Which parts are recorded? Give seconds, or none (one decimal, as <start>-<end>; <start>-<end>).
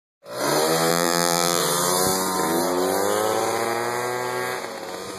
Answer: 0.0-0.9; 1.6-5.2